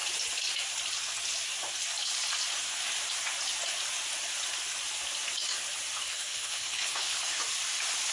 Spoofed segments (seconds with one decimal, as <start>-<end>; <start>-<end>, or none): 6.0-7.4

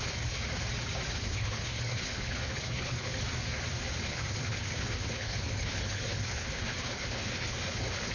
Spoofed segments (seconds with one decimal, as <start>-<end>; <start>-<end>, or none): 0.0-0.4; 1.1-3.1; 4.0-8.1

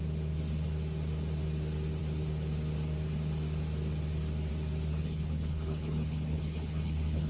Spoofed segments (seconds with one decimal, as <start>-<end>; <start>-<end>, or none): 4.9-7.3

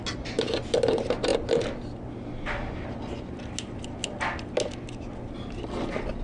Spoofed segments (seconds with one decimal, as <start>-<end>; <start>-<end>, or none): none